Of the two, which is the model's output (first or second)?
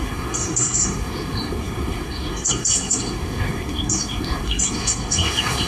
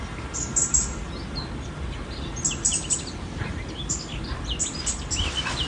first